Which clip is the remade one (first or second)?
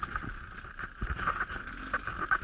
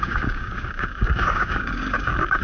second